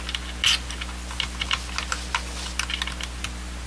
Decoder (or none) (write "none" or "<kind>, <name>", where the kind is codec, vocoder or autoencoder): none